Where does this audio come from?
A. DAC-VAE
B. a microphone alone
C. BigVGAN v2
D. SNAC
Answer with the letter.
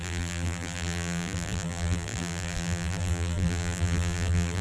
C